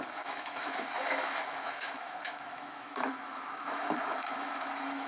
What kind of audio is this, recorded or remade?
remade